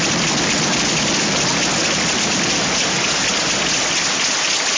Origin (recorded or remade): recorded